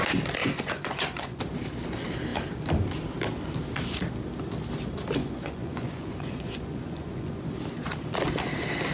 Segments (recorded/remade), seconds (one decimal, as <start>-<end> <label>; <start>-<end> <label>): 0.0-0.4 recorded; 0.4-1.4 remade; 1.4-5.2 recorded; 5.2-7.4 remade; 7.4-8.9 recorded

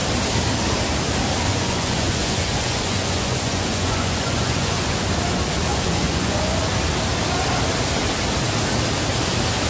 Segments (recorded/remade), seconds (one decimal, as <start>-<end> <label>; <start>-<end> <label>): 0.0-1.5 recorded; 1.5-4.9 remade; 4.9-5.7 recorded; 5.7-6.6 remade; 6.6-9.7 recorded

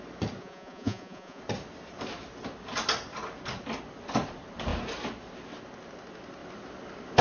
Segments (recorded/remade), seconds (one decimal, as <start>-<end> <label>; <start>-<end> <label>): 0.0-0.4 recorded; 0.4-1.4 remade; 1.4-7.2 recorded

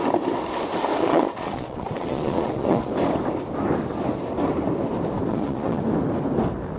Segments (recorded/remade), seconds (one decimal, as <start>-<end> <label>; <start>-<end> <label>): 0.0-0.9 recorded; 0.9-2.9 remade; 2.9-5.3 recorded; 5.3-5.8 remade; 5.8-6.8 recorded

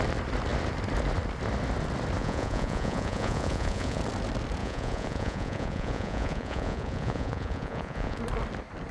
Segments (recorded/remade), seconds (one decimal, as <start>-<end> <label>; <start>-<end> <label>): 0.0-2.2 recorded; 2.2-4.0 remade; 4.0-4.6 recorded; 4.6-8.2 remade; 8.2-8.9 recorded

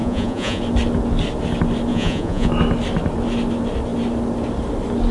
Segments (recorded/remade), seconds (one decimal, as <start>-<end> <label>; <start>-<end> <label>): 0.0-0.6 remade; 0.6-1.9 recorded; 1.9-2.5 remade; 2.5-5.1 recorded

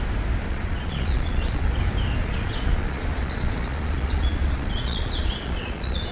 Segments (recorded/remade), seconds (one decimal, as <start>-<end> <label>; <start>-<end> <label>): 0.0-0.5 recorded; 0.5-1.8 remade; 1.8-2.2 recorded; 2.2-6.1 remade